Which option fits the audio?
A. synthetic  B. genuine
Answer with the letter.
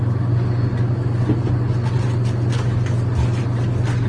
B